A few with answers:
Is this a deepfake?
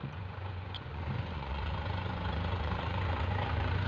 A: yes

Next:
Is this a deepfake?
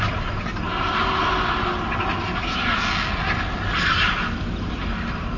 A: no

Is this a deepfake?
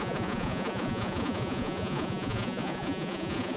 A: yes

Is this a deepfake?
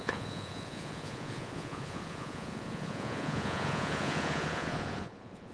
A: yes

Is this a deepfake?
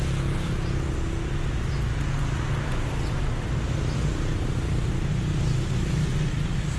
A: no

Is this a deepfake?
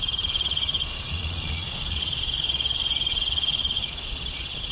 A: yes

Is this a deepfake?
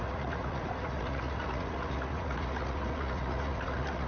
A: yes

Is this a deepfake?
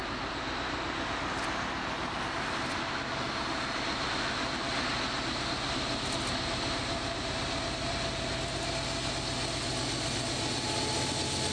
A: no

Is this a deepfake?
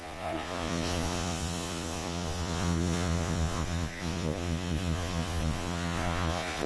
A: yes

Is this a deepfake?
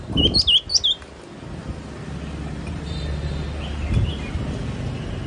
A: no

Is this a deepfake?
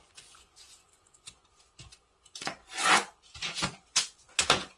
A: yes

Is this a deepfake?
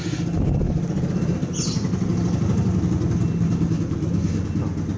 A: no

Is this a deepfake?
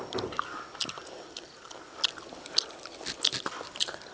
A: no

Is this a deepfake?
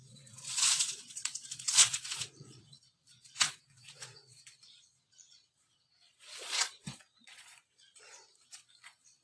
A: yes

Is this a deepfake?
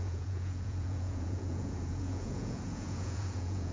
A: yes